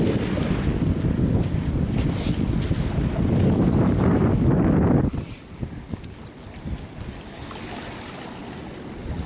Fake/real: real